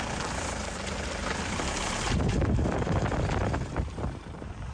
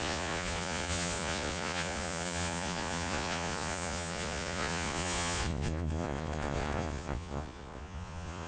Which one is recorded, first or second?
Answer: first